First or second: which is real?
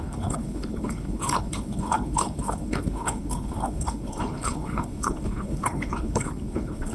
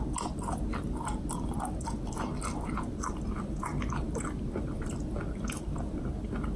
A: second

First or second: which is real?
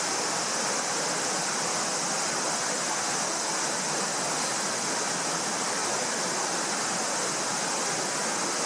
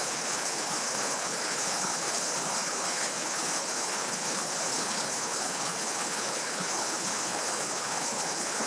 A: first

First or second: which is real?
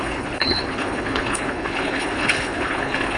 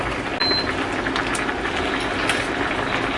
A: second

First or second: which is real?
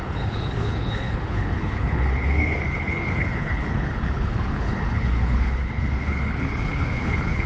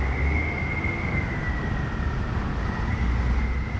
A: second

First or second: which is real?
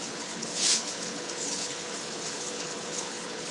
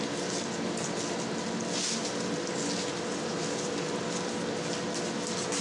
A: second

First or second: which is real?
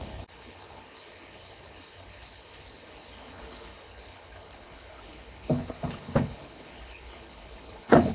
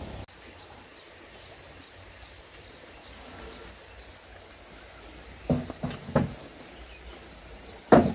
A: second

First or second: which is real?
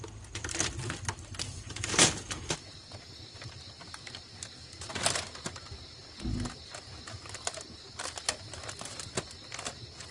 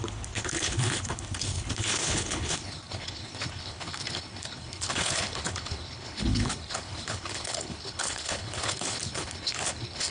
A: first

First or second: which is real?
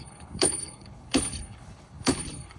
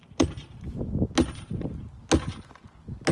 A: second